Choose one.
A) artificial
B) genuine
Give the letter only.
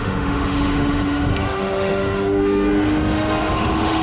A